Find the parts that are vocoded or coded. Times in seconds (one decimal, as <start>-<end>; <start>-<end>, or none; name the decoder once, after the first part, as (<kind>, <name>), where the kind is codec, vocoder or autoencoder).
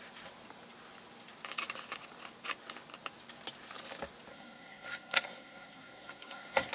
4.3-6.7 (codec, SNAC)